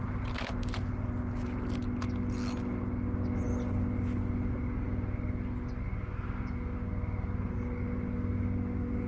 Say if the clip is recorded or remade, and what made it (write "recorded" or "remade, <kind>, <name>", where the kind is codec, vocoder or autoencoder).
recorded